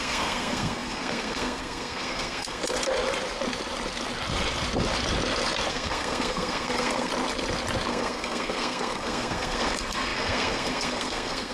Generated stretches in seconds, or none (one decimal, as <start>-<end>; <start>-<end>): 0.0-2.6; 5.7-7.1; 7.9-11.5